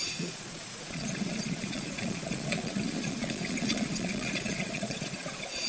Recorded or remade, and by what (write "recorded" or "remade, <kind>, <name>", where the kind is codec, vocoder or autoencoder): remade, vocoder, Vocos